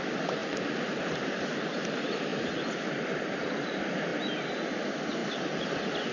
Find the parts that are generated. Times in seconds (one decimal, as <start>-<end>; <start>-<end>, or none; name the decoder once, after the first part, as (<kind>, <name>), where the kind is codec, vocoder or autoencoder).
0.0-4.1 (vocoder, BigVGAN v2); 4.8-5.2